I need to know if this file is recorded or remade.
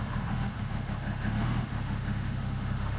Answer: remade